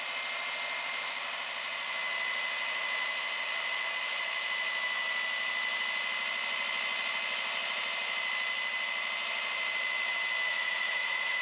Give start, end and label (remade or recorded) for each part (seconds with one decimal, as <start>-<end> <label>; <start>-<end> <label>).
0.0-10.5 recorded; 10.5-11.4 remade